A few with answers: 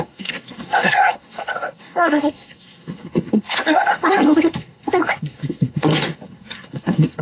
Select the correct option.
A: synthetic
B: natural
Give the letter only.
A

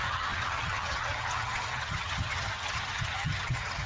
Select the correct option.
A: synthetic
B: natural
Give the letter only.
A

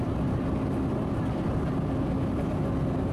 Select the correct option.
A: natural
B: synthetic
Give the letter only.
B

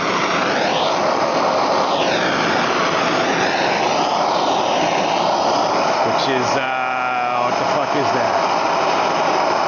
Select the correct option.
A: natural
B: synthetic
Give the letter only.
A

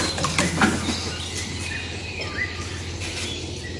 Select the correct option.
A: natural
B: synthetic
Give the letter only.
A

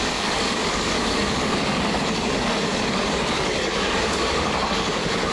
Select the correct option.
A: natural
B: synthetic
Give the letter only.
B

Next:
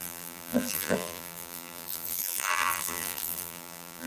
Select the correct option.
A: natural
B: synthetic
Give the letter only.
B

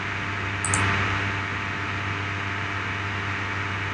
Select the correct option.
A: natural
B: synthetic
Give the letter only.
A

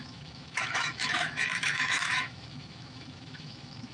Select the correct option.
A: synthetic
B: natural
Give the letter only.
A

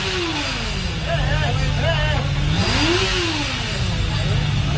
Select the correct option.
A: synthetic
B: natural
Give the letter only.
B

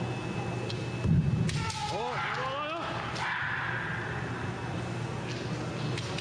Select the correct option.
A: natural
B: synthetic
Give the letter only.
A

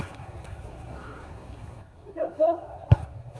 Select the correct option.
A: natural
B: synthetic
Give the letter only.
B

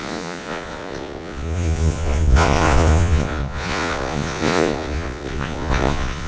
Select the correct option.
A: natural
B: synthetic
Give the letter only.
B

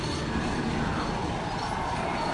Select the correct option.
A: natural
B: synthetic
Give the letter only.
A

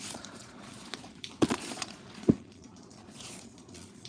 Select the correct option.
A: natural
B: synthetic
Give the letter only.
B